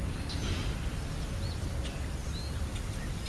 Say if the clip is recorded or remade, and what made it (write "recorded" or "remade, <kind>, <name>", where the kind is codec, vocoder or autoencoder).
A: recorded